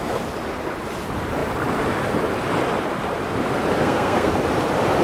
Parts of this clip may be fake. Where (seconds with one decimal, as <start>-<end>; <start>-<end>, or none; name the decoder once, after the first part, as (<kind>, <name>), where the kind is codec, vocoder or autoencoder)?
3.8-4.3 (codec, SNAC)